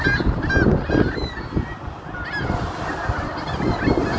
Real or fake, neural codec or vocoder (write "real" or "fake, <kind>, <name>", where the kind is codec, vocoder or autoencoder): fake, vocoder, BigVGAN v2